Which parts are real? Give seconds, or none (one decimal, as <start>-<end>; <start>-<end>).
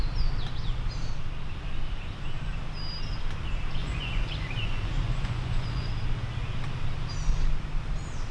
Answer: 0.0-3.8; 5.9-8.3